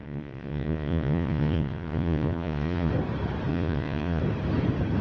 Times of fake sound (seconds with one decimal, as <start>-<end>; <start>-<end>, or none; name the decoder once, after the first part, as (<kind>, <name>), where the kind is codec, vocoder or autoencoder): 0.0-2.9 (vocoder, Vocos); 3.5-4.2